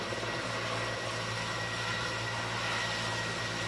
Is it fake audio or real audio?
real